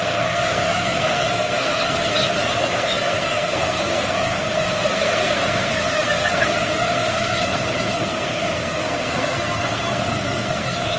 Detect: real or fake fake